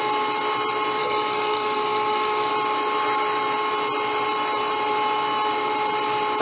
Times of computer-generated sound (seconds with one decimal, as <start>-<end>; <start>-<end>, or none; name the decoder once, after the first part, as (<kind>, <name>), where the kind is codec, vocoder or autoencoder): 1.0-2.5 (codec, DAC)